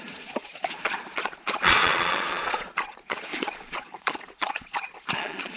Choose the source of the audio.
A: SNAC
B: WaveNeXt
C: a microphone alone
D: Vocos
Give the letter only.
D